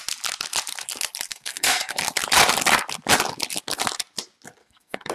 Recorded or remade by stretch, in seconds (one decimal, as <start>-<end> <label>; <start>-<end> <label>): 0.0-1.3 recorded; 1.3-2.0 remade; 2.0-4.6 recorded; 4.6-5.1 remade